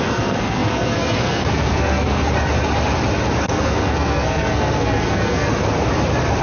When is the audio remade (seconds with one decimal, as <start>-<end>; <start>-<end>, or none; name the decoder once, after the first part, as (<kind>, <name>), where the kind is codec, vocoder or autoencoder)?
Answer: 0.0-2.2 (codec, SNAC); 3.4-5.5